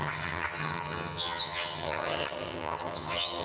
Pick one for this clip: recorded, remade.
remade